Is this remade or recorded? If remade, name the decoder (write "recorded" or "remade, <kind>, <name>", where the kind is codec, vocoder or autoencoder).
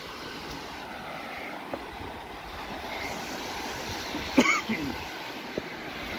recorded